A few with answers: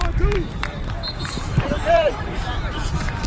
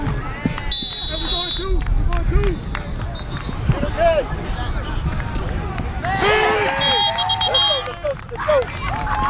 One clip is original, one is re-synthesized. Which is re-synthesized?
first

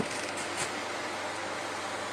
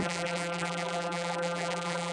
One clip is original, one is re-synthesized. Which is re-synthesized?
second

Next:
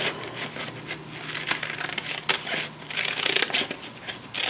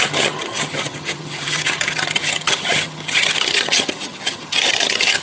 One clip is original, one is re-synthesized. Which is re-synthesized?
second